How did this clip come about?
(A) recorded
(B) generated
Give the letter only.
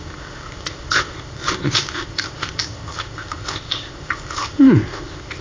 B